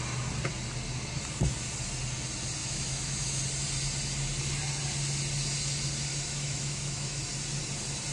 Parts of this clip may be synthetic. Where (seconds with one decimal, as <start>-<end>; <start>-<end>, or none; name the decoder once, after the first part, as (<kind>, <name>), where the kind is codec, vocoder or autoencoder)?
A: 2.6-3.4 (autoencoder, DAC-VAE); 6.1-7.3